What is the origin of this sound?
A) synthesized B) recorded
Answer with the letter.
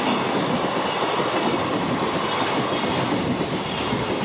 B